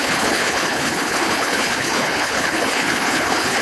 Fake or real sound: fake